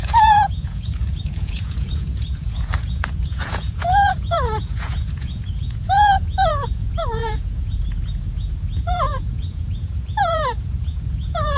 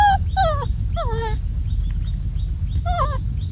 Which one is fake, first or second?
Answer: first